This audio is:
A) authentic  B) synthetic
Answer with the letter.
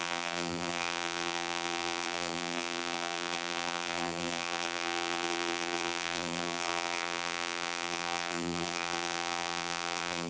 B